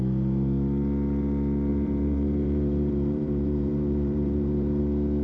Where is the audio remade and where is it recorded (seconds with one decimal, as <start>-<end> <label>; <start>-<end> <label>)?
0.0-1.7 recorded; 1.7-4.8 remade; 4.8-5.2 recorded

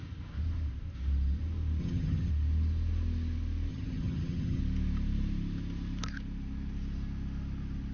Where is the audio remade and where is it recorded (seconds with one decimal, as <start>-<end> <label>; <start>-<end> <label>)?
0.0-1.8 recorded; 1.8-2.3 remade; 2.3-3.7 recorded; 3.7-4.6 remade; 4.6-7.9 recorded

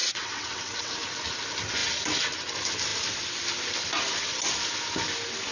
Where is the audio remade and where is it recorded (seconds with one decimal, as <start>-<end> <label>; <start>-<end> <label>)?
0.0-0.9 remade; 0.9-5.5 recorded